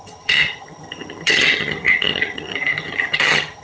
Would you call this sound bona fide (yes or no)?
no